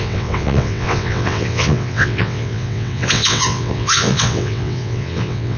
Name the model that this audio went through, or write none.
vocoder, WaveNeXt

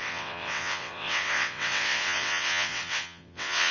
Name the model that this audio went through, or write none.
vocoder, WaveNeXt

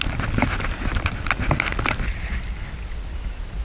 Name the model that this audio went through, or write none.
none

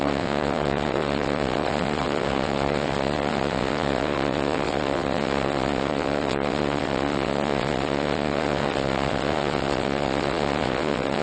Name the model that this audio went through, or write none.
vocoder, WaveNeXt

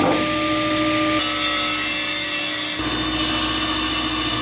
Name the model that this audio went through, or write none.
none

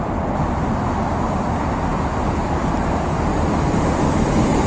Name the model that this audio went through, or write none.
none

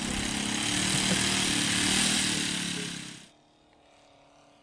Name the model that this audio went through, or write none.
none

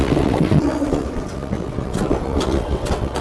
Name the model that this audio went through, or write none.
vocoder, WaveNeXt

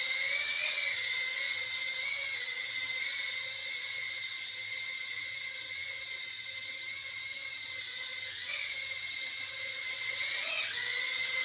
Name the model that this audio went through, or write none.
vocoder, WaveNeXt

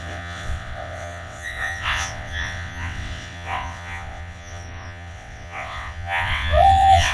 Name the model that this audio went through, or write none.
vocoder, WaveNeXt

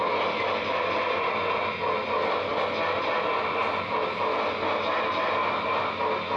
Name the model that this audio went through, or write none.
none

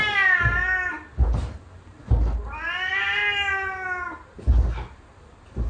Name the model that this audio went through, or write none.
none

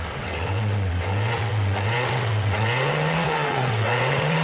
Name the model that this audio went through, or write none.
vocoder, WaveNeXt